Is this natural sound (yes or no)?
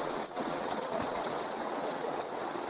no